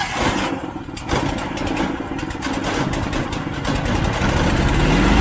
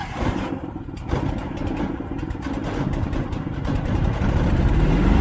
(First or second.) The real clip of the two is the first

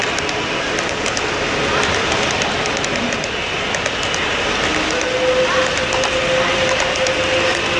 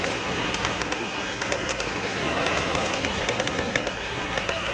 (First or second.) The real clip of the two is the first